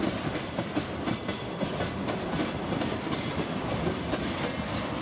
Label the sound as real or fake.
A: real